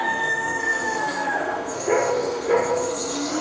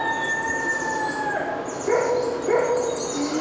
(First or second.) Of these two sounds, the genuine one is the second